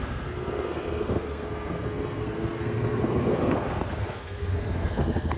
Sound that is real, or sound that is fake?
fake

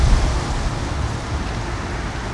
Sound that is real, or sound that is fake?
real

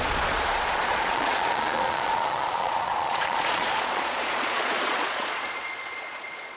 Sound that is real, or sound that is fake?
fake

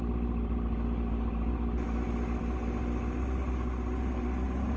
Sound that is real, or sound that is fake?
real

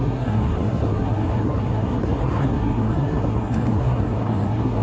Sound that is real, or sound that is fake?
fake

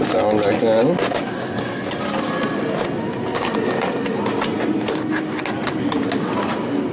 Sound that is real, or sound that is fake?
real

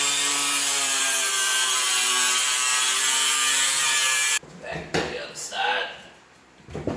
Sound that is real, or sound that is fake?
fake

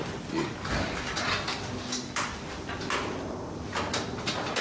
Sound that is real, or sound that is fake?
real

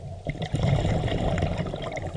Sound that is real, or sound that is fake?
real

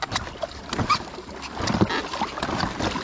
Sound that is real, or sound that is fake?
real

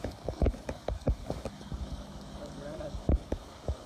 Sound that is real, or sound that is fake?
fake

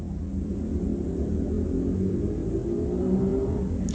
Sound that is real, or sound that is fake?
real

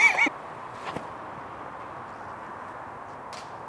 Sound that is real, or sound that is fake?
real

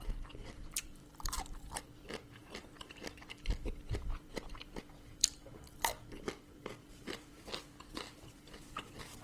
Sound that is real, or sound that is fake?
fake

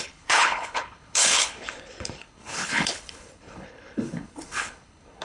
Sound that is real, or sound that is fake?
fake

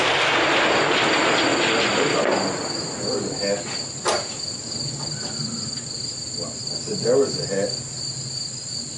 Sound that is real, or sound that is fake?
real